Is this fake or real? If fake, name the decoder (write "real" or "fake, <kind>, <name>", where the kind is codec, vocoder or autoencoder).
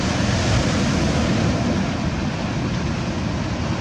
real